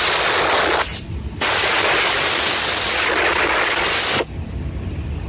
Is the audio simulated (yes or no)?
no